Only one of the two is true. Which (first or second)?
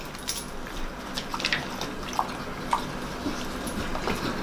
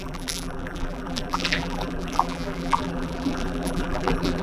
first